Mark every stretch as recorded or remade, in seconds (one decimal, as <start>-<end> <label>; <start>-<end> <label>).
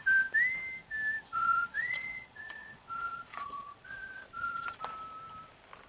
0.0-1.3 recorded; 1.3-4.8 remade; 4.8-5.9 recorded